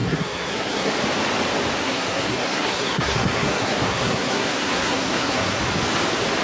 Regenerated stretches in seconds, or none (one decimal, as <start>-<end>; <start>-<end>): 0.0-0.9; 1.8-5.6